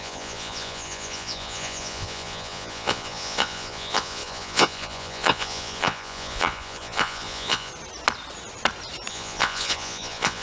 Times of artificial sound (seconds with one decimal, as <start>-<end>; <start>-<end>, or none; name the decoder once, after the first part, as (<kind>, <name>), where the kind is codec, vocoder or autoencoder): 0.0-7.7 (vocoder, Vocos); 9.1-10.4